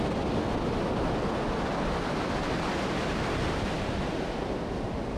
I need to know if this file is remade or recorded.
recorded